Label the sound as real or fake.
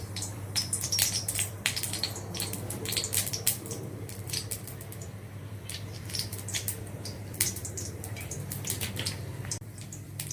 fake